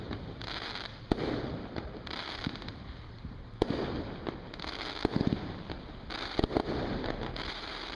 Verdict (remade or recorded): recorded